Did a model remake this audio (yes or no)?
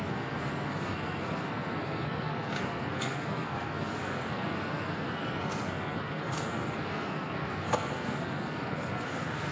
yes